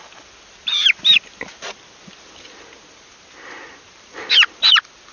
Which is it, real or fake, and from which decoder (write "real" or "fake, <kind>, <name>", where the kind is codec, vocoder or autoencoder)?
real